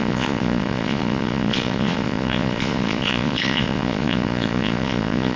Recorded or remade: remade